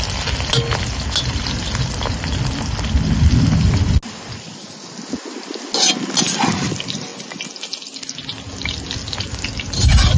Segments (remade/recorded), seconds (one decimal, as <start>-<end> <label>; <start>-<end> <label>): 0.0-10.2 recorded